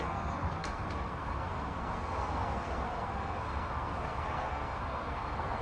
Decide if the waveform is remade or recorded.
remade